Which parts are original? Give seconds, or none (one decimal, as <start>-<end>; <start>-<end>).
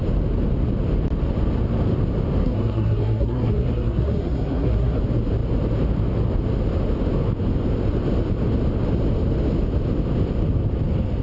0.0-2.4; 5.0-11.2